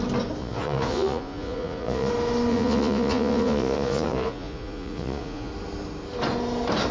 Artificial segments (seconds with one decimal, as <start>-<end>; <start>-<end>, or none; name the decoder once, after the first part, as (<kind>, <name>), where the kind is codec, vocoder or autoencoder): 0.4-2.1 (vocoder, Vocos); 2.5-5.5